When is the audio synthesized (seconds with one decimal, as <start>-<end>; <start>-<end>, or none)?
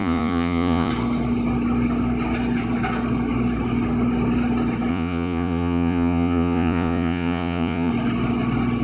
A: 0.0-0.9; 4.9-7.9